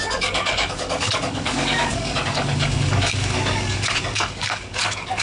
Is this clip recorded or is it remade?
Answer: remade